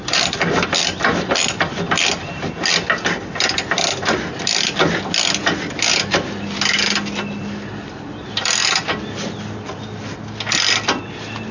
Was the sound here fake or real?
real